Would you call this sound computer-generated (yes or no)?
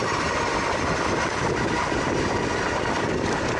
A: no